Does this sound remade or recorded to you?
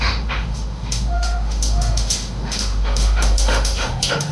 remade